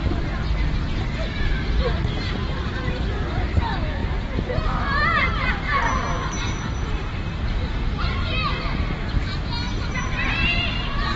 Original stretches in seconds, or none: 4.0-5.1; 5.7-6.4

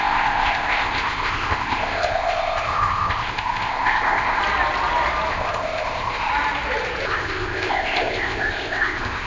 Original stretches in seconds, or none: 4.4-5.3; 6.3-7.0

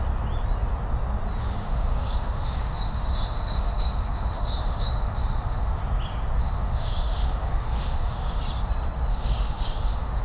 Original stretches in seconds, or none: 0.0-1.4; 5.8-6.4; 8.4-9.1

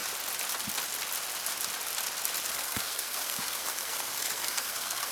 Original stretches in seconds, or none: 0.0-2.5

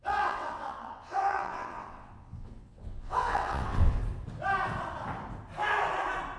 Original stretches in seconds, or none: 4.0-6.4

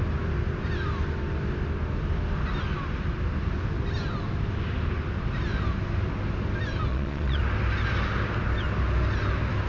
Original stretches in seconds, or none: 0.0-6.9; 7.4-9.7

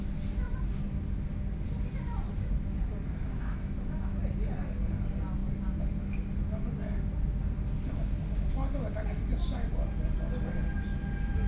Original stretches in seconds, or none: 0.0-3.2; 4.2-11.5

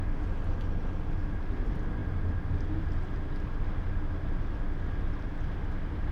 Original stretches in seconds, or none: 0.0-6.1